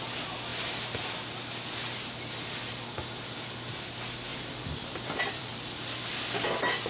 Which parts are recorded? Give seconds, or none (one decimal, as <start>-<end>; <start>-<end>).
0.0-4.3; 5.5-6.9